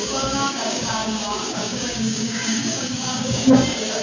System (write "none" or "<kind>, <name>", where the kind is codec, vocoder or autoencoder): codec, DAC